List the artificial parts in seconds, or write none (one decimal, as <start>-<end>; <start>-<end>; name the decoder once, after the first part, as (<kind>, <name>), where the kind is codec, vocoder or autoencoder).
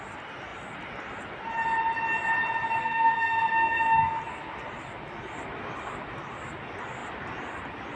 2.8-4.2 (codec, SNAC)